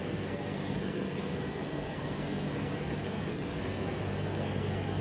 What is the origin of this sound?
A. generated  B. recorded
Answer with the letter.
A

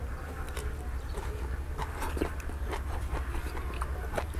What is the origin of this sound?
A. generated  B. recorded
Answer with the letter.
B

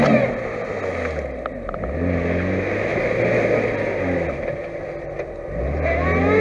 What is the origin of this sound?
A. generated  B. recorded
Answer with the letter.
B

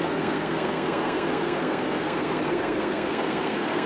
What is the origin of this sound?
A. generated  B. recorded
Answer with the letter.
A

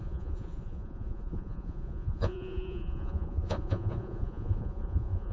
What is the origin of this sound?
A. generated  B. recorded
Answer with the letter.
A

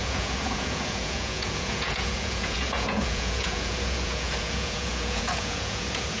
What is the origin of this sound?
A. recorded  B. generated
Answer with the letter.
B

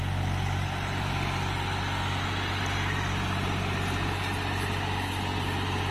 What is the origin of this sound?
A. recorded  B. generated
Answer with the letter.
A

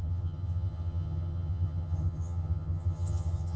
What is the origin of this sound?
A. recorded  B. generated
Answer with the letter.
B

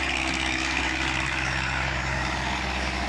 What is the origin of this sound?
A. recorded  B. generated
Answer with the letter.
B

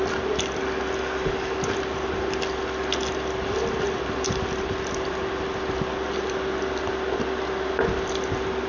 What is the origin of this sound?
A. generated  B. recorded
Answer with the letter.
B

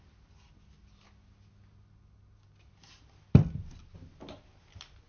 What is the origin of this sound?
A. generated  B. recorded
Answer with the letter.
B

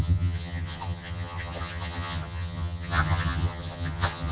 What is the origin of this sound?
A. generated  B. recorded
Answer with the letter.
A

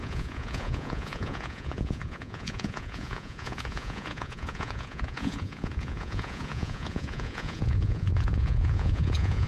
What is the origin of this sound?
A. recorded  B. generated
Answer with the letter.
B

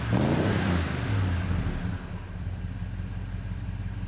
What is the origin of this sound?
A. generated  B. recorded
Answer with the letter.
A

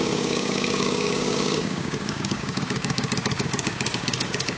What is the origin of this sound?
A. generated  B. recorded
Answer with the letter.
A